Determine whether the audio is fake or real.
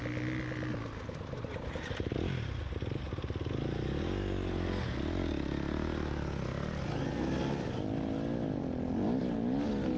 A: real